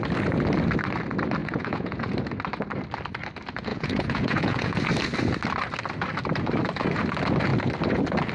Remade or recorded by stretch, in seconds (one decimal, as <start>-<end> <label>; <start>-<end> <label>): 0.0-1.4 recorded; 1.4-2.1 remade; 2.1-3.7 recorded; 3.7-4.8 remade; 4.8-8.3 recorded